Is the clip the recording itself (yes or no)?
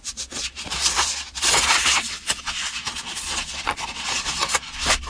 no